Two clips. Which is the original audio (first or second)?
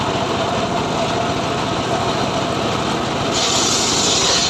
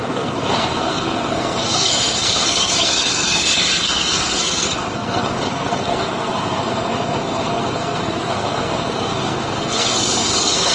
first